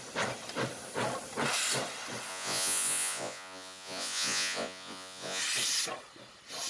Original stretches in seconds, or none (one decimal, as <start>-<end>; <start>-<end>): 0.0-2.3; 5.4-6.7